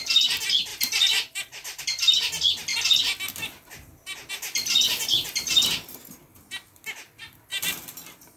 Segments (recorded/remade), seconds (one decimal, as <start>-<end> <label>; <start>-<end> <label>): 0.0-0.7 recorded; 0.7-1.8 remade; 1.8-7.5 recorded; 7.5-8.4 remade